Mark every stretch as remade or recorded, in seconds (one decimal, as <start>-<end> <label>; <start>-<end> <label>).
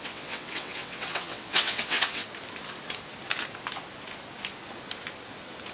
0.0-2.2 remade; 2.2-5.7 recorded